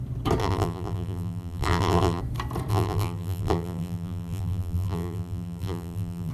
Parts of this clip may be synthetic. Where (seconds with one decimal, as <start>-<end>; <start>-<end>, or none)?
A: 0.4-2.2; 2.7-6.3